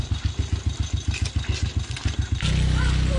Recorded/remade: recorded